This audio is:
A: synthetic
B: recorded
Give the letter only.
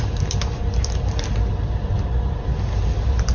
B